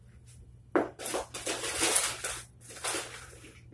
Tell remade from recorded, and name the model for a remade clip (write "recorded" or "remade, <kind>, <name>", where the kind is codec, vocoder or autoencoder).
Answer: recorded